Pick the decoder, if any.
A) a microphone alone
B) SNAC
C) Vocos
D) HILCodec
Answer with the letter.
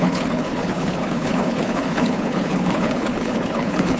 D